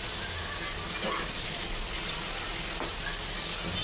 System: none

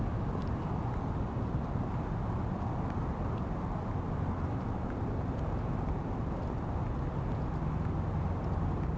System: none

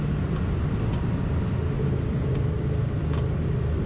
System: none